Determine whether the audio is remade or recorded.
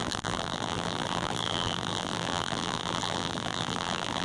remade